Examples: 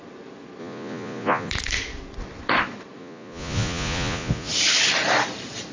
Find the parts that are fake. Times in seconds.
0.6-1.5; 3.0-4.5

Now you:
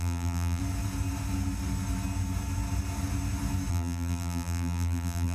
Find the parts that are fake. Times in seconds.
0.0-0.6; 3.7-5.3

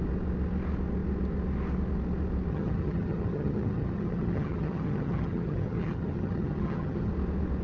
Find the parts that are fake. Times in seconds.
2.5-7.1

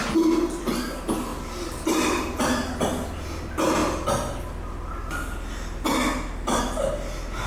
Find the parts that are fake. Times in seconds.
none

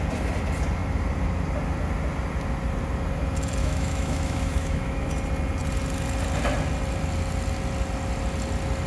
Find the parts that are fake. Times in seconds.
3.6-5.1

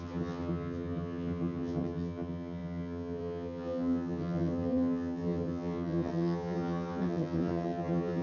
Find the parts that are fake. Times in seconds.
0.0-8.2

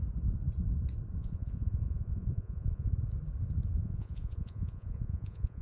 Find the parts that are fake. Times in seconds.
1.2-2.9; 3.8-5.6